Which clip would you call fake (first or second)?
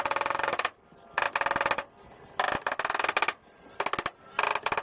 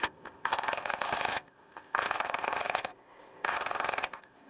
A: second